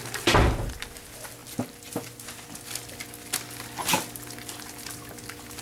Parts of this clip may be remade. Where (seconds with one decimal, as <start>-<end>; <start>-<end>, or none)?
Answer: none